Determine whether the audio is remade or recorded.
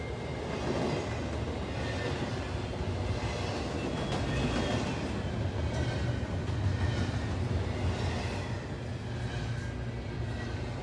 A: recorded